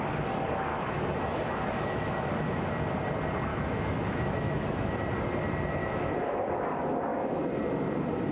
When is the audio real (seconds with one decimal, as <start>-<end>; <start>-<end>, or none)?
0.0-0.7; 2.7-3.5; 4.9-5.8; 6.4-7.1; 7.6-8.3

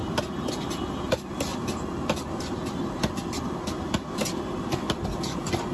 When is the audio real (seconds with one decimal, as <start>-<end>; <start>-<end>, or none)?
0.0-5.7

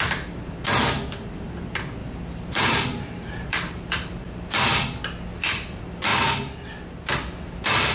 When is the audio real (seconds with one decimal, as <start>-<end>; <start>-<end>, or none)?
0.0-2.0; 4.2-7.9

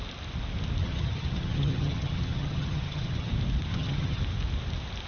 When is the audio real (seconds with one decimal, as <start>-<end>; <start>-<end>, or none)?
0.0-0.8; 3.3-3.7; 4.2-5.1

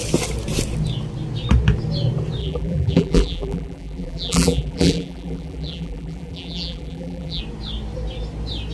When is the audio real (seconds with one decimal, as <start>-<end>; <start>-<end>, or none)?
0.0-2.4; 7.4-8.7

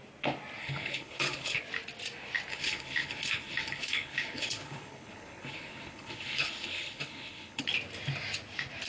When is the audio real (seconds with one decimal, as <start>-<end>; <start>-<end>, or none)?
0.0-0.6; 1.6-2.5; 7.6-8.9

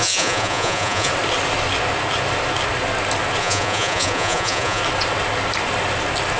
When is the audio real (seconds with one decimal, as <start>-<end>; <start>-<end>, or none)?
1.1-3.4; 4.8-6.4

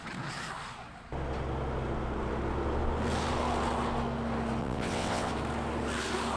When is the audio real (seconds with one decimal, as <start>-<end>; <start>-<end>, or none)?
0.0-4.6; 5.3-6.4